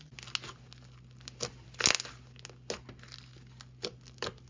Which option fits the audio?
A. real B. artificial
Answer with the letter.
A